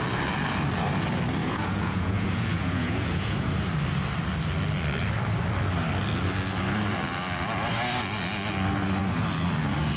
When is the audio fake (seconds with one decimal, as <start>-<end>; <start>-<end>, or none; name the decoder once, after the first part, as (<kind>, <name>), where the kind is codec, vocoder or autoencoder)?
1.4-3.5 (vocoder, Vocos)